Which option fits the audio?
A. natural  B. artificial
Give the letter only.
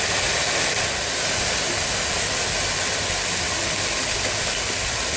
A